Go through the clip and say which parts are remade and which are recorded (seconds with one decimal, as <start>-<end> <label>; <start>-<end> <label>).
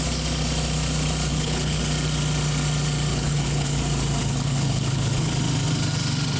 0.0-1.3 recorded; 1.3-1.8 remade; 1.8-3.1 recorded; 3.1-3.8 remade; 3.8-4.2 recorded; 4.2-5.3 remade; 5.3-6.4 recorded